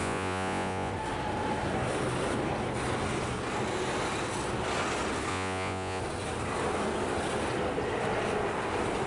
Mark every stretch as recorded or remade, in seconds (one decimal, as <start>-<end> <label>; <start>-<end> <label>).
0.0-0.9 remade; 0.9-5.3 recorded; 5.3-6.0 remade; 6.0-9.1 recorded